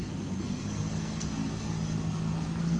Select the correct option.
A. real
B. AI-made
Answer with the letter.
B